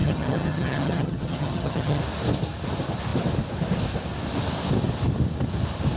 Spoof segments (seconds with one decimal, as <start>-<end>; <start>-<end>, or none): 0.0-2.0